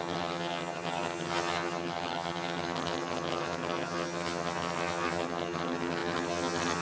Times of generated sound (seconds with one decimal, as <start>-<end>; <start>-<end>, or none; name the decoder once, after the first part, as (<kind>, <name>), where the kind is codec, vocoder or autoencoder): 0.0-6.8 (vocoder, HiFi-GAN)